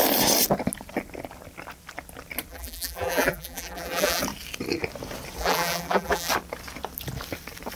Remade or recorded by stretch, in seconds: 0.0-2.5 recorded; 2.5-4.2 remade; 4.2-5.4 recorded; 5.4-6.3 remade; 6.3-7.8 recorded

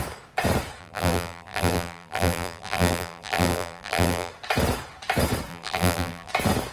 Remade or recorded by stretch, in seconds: 0.0-0.8 recorded; 0.8-4.3 remade; 4.3-5.5 recorded; 5.5-6.3 remade; 6.3-6.7 recorded

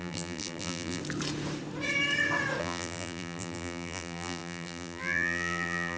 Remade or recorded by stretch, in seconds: 0.0-1.0 remade; 1.0-2.6 recorded; 2.6-6.0 remade

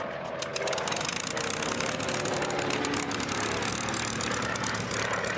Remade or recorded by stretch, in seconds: 0.0-5.4 remade

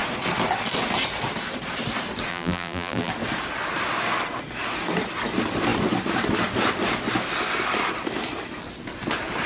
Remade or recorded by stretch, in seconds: 0.0-2.3 recorded; 2.3-3.1 remade; 3.1-9.5 recorded